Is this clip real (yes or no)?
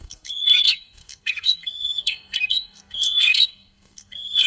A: no